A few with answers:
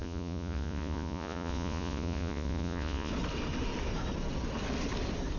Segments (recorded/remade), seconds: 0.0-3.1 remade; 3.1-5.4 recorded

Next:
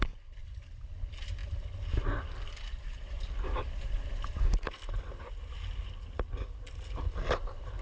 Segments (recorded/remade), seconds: 0.0-7.8 recorded

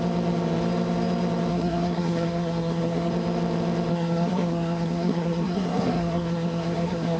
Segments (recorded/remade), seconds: 0.0-1.5 recorded; 1.5-3.1 remade; 3.1-3.9 recorded; 3.9-7.2 remade

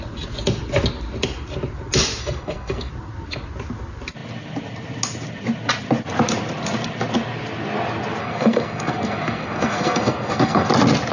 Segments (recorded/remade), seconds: 0.0-2.2 recorded; 2.2-2.9 remade; 2.9-8.2 recorded; 8.2-10.7 remade; 10.7-11.1 recorded